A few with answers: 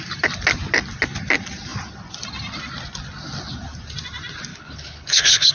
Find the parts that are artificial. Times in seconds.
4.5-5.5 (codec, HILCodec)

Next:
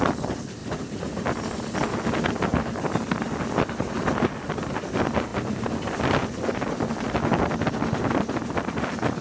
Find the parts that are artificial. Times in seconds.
0.6-1.6 (vocoder, BigVGAN v2); 2.5-3.4; 5.3-6.7

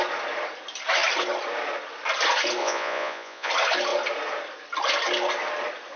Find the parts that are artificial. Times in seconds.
2.6-3.5 (vocoder, Vocos)

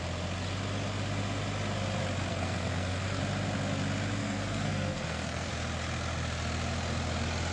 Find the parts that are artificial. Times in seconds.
2.3-3.2 (codec, SNAC); 4.2-5.5

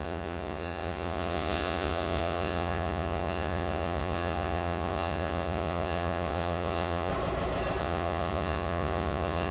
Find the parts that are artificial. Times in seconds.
0.0-7.1 (vocoder, Vocos); 7.8-9.5

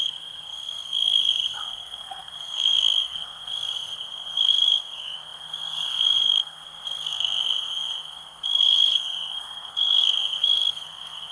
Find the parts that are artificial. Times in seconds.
0.0-11.3 (codec, SNAC)

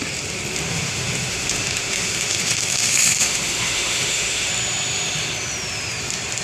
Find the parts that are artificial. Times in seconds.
0.7-4.5 (autoencoder, DAC-VAE)